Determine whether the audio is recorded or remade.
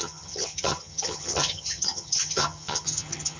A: remade